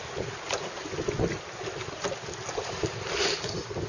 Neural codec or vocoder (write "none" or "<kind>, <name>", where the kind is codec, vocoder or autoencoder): none